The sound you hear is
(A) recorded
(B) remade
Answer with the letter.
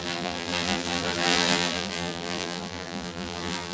B